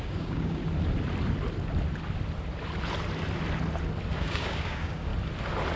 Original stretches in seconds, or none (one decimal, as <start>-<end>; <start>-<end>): 0.6-4.1; 5.1-5.8